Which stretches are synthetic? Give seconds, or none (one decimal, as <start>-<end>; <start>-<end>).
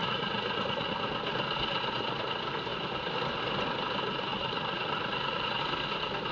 0.0-0.9; 4.3-5.6